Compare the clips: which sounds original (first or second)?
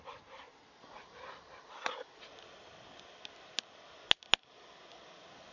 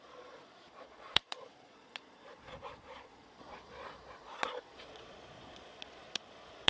first